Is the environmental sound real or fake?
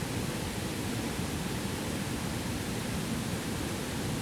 real